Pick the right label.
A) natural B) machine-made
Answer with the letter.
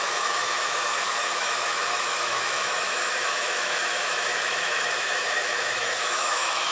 B